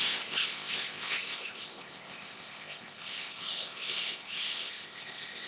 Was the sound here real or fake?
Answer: fake